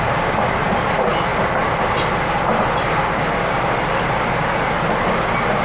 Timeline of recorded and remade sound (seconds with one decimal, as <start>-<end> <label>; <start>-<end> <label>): 0.0-5.6 recorded